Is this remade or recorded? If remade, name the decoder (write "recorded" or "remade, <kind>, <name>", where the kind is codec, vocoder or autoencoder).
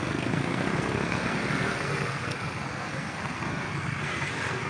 remade, codec, SNAC